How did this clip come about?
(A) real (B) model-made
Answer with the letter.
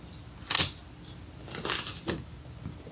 A